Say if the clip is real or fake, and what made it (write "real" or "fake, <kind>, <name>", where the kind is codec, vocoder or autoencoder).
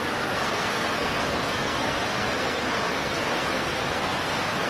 fake, codec, SNAC